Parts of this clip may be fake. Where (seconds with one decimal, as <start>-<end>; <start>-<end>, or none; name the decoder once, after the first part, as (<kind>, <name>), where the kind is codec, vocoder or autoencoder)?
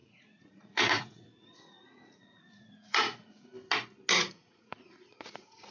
0.0-3.5 (vocoder, Vocos); 4.2-5.7